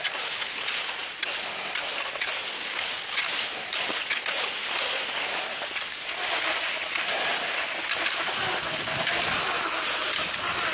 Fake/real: real